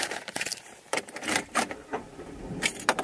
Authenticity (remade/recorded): remade